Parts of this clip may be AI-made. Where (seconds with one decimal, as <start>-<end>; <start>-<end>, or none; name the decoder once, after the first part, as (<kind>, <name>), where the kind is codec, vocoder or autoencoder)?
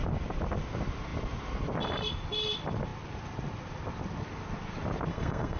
5.1-5.6 (codec, SNAC)